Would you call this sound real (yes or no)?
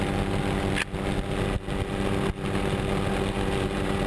yes